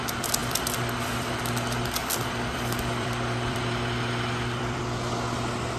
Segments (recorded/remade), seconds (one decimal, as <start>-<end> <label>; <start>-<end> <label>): 0.0-0.4 recorded; 0.4-1.4 remade; 1.4-2.0 recorded; 2.0-4.8 remade; 4.8-5.8 recorded